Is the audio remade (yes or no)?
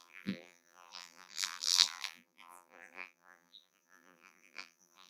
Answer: yes